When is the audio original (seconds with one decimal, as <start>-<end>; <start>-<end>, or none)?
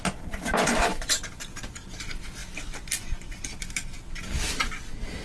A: none